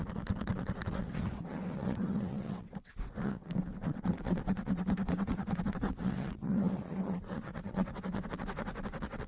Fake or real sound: fake